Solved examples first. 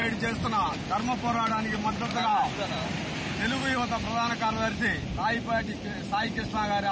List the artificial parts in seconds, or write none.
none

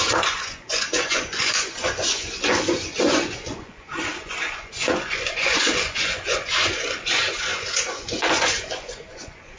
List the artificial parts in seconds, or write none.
0.0-9.6 (vocoder, Vocos)

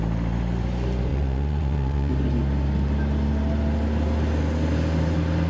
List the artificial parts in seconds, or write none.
1.1-2.1 (vocoder, Vocos)

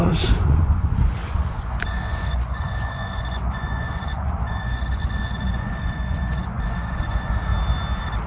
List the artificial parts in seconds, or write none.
0.0-7.5 (vocoder, Vocos)

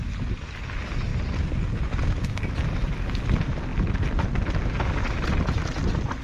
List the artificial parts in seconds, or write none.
none